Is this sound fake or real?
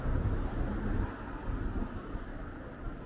real